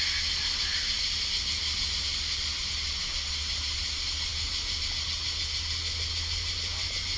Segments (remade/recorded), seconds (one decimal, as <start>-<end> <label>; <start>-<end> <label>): 0.0-7.2 recorded

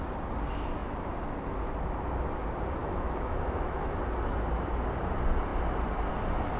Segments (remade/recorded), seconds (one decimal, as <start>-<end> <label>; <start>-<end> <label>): 0.0-2.8 recorded; 2.8-4.0 remade; 4.0-6.6 recorded